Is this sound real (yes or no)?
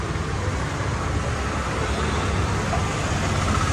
yes